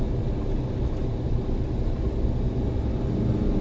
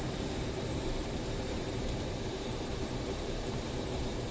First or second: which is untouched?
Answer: first